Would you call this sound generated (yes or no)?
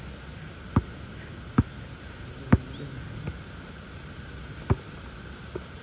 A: no